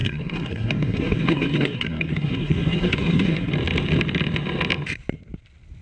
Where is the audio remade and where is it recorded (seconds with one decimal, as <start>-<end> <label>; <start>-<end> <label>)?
0.0-3.5 remade; 3.5-5.8 recorded